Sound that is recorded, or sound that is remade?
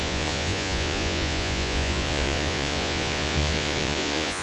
remade